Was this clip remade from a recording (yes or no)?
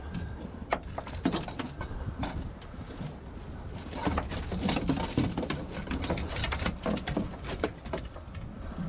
no